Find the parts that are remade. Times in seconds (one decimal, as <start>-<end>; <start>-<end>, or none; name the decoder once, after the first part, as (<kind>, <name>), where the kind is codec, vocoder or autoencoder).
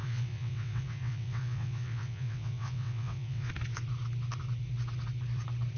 0.0-3.5 (vocoder, WaveNeXt)